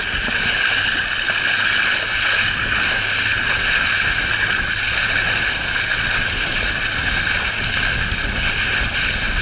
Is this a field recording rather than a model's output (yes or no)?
yes